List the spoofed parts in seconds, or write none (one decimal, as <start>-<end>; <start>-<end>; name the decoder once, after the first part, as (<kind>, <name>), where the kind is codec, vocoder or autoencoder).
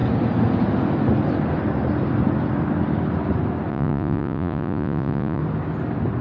3.7-5.4 (vocoder, Vocos)